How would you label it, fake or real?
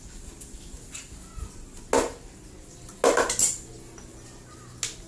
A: real